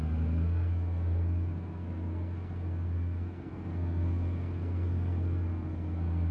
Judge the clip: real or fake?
fake